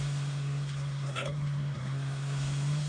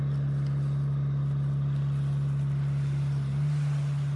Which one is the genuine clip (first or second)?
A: second